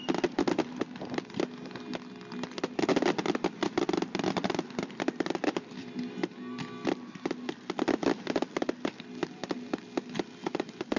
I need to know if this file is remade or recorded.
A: recorded